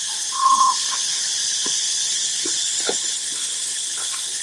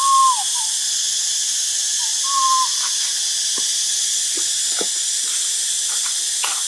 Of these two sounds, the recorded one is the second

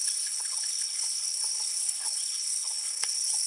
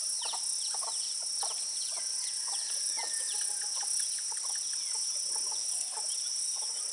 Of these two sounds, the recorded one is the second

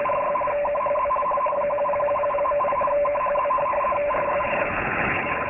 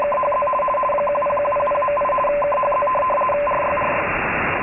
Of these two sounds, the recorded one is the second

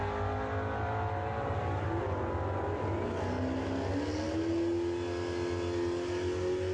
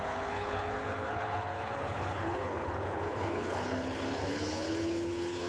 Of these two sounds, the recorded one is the first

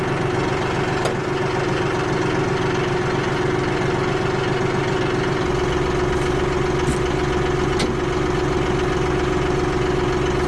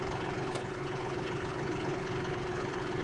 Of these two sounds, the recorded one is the first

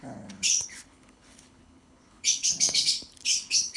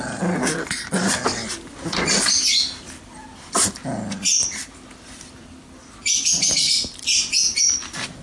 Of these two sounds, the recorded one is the second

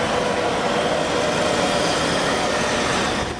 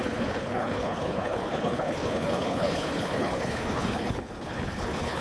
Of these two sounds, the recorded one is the first